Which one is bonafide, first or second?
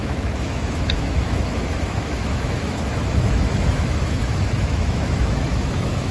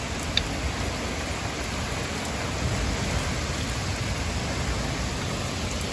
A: second